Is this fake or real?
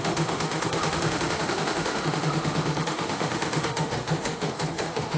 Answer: fake